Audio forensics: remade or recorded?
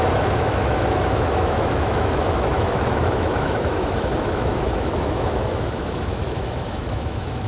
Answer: remade